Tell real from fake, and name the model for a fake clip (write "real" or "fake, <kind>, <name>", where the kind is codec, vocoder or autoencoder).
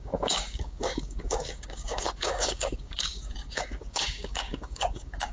fake, codec, DAC